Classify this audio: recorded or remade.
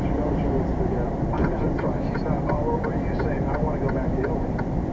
recorded